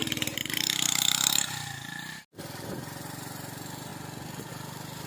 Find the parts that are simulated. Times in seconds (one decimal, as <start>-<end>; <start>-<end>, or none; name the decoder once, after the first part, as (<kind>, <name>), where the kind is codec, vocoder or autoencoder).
0.0-3.9 (vocoder, BigVGAN v2); 4.5-5.1